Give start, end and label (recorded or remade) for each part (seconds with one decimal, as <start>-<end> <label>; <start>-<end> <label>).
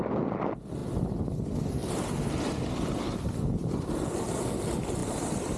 0.0-5.0 recorded; 5.0-5.6 remade